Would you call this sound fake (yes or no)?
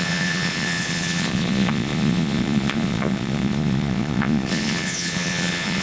yes